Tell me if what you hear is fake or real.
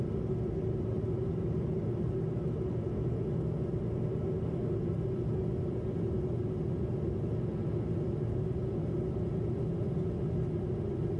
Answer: real